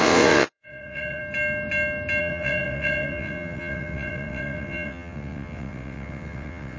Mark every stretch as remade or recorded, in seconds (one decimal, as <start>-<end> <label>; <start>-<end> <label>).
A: 0.0-1.2 remade; 1.2-2.2 recorded; 2.2-6.8 remade